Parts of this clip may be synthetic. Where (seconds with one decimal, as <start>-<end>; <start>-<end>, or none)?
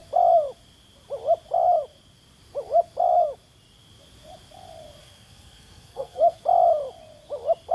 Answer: 5.0-6.4